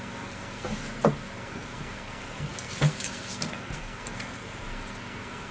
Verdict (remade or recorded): remade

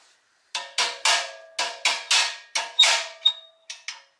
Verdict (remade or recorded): recorded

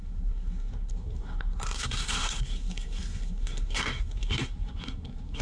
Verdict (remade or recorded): remade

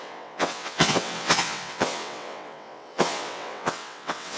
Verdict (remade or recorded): remade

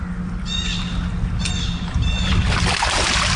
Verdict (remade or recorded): recorded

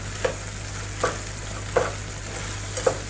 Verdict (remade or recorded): recorded